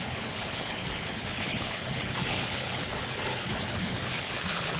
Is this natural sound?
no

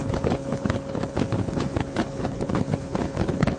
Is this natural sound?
no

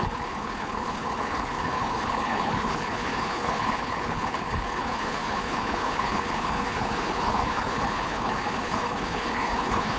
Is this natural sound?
no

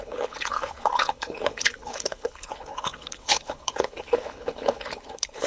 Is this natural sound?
no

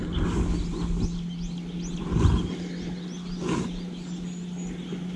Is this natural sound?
yes